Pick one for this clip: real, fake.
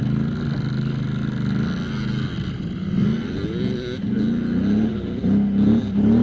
real